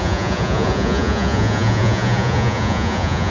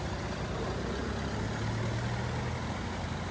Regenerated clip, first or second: first